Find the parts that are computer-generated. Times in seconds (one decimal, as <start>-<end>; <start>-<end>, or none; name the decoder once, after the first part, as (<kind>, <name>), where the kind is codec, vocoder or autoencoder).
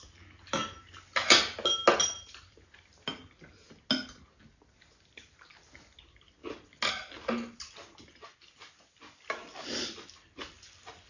none